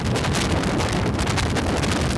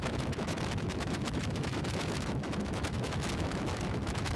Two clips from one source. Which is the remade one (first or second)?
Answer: second